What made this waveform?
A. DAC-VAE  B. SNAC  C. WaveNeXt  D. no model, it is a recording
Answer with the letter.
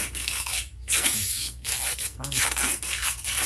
B